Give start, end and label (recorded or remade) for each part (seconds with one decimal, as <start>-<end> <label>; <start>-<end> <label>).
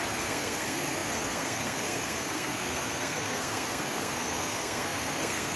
0.0-5.6 remade